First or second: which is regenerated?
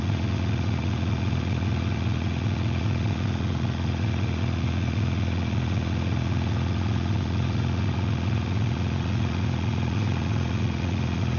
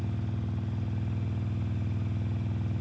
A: first